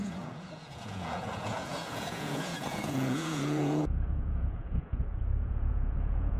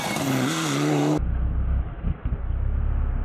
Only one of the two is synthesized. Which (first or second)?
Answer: first